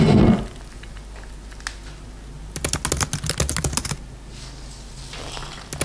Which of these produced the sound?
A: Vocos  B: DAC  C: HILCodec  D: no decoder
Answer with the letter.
D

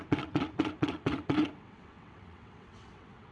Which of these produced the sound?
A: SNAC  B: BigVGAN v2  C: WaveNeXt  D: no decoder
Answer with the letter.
C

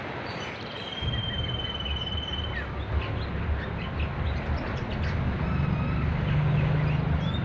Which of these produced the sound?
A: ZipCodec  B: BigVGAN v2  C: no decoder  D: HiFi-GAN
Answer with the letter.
C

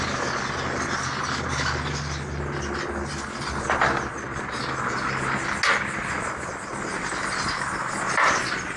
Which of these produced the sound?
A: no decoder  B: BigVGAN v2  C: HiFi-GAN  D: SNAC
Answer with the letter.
A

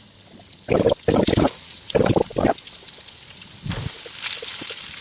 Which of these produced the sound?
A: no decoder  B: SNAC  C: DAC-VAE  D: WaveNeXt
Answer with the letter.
A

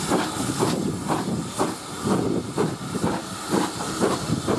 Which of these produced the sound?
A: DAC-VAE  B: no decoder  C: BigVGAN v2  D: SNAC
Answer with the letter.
B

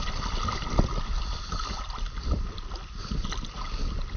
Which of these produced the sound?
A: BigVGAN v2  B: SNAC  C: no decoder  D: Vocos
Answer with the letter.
C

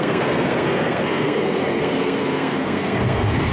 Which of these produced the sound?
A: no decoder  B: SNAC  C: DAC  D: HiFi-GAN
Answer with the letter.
B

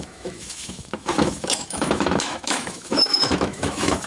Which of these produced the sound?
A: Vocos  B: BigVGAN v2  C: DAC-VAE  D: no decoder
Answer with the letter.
C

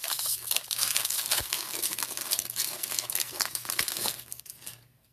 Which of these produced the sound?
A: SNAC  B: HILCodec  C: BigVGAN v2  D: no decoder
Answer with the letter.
A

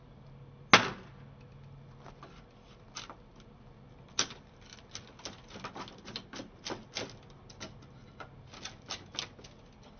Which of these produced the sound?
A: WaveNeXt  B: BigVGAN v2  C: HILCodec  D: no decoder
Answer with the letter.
D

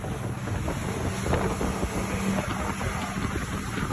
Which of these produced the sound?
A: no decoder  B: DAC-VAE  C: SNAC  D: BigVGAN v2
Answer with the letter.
A